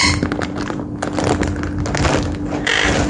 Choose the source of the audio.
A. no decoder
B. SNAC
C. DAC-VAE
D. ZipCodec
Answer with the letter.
A